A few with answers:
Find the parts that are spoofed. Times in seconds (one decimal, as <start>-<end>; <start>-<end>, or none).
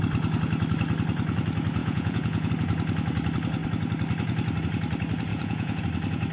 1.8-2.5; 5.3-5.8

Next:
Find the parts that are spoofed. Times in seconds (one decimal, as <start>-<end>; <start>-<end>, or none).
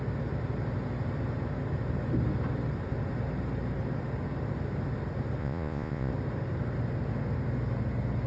5.4-6.1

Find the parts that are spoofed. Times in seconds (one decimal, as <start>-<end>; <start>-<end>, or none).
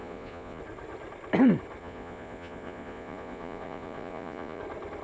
0.0-0.6; 1.8-4.6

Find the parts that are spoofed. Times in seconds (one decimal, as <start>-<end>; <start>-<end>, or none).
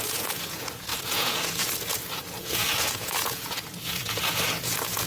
0.0-5.1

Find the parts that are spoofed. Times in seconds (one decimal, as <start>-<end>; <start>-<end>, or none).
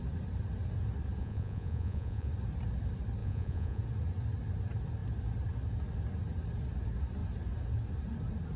1.2-2.3; 3.2-3.8